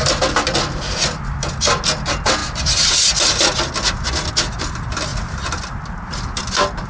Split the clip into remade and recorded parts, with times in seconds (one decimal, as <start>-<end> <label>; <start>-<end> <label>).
0.0-6.9 recorded